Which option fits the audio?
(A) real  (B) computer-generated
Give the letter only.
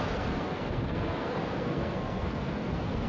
B